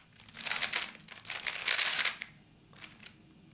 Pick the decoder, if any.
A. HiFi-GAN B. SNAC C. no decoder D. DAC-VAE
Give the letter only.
C